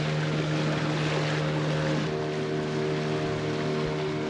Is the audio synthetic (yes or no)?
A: no